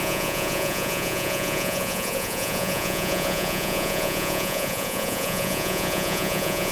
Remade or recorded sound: remade